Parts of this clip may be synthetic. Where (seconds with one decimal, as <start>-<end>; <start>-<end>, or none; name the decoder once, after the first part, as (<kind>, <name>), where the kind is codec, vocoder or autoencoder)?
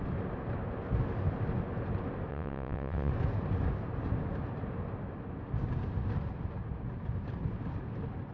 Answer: 2.3-3.1 (vocoder, WaveNeXt)